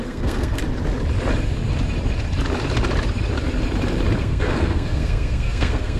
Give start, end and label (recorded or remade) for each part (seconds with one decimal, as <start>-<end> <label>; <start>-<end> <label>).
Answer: 0.0-0.6 remade; 0.6-4.2 recorded; 4.2-6.0 remade